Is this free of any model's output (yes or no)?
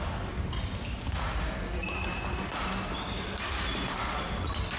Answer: yes